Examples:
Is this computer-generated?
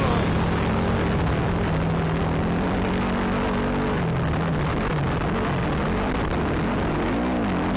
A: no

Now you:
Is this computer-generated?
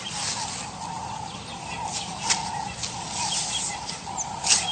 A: no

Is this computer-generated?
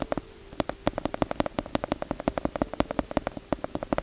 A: no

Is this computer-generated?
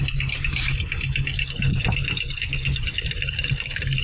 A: no